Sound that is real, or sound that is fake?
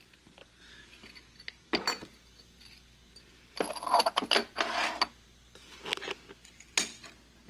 real